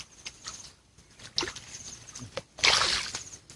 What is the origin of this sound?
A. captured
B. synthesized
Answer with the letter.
A